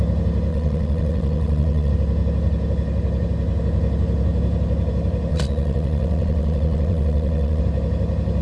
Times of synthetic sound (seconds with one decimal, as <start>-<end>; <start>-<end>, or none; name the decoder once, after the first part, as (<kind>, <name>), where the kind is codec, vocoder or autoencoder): 0.5-1.9 (vocoder, WaveNeXt); 5.3-7.6